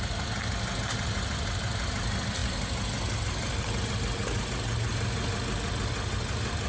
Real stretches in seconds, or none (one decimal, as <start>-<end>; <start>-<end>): 0.0-6.7